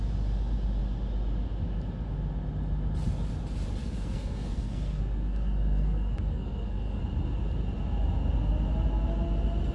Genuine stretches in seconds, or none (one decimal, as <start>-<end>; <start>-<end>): 0.0-3.8; 7.0-9.7